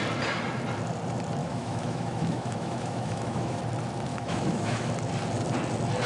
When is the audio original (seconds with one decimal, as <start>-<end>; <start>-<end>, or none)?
0.0-1.4; 3.6-4.1; 4.9-6.1